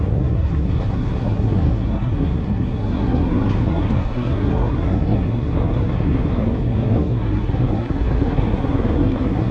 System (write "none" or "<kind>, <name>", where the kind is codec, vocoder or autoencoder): codec, SNAC